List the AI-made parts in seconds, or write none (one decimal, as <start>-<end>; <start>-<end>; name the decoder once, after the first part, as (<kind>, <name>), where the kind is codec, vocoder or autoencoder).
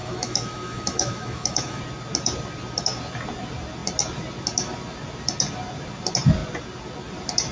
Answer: 0.0-1.8 (autoencoder, DAC-VAE)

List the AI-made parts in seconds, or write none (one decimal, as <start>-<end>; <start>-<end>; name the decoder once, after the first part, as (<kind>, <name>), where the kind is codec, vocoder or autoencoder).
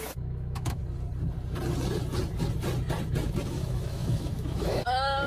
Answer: 0.0-0.8 (autoencoder, DAC-VAE); 3.5-5.3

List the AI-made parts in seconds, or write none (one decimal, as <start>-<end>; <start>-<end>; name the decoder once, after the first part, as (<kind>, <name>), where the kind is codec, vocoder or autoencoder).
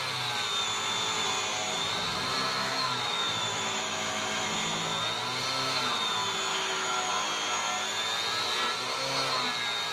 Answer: 2.7-4.5 (autoencoder, DAC-VAE); 6.5-7.1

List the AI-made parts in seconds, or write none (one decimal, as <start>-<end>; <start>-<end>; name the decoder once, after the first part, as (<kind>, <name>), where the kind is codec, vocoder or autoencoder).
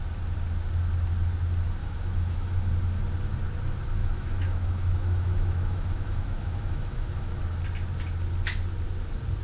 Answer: 1.8-2.7 (autoencoder, DAC-VAE); 4.0-7.4